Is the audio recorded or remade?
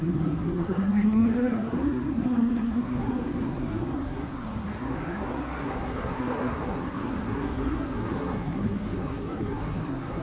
remade